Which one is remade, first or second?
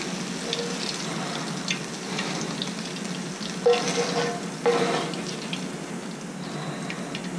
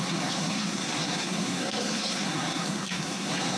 second